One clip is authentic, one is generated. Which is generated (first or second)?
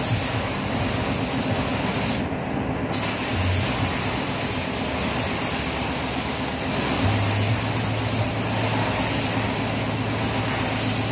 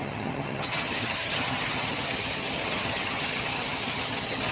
second